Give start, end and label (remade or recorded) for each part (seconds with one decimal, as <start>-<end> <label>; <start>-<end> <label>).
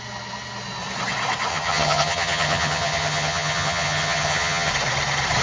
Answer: 0.0-1.5 recorded; 1.5-4.7 remade; 4.7-5.4 recorded